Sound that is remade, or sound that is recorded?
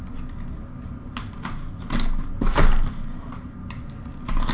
recorded